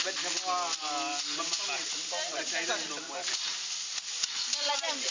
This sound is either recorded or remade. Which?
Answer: recorded